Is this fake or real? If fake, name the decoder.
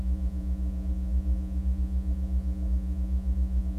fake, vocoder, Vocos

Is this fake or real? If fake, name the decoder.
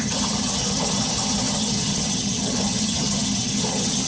fake, vocoder, HiFi-GAN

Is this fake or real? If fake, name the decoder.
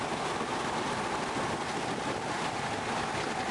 real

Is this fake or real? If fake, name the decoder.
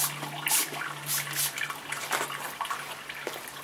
real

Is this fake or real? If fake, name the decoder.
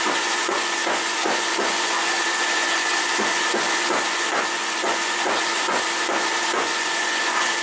fake, vocoder, Vocos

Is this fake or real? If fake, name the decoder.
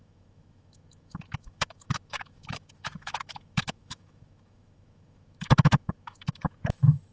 fake, autoencoder, DAC-VAE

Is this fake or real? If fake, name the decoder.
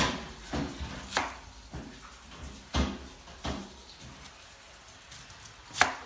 real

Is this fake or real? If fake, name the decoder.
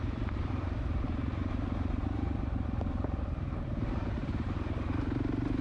fake, vocoder, BigVGAN v2